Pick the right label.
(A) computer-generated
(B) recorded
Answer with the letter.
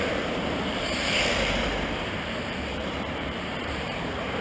A